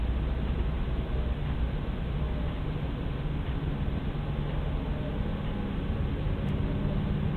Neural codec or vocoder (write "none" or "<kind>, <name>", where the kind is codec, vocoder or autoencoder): none